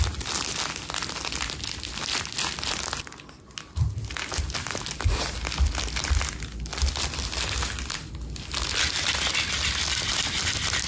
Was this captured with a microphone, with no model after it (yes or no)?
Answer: yes